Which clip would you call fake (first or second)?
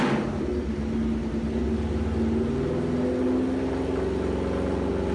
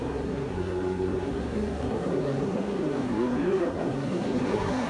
second